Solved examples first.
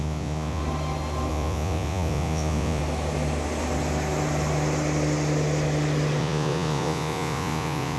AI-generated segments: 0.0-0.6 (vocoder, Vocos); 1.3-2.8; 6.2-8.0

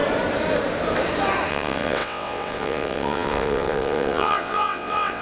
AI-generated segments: 1.5-5.2 (vocoder, WaveNeXt)